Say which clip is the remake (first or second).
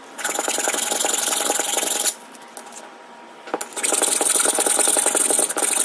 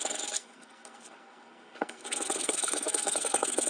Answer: second